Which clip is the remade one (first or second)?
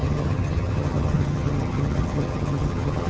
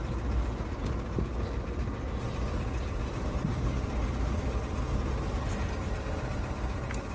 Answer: first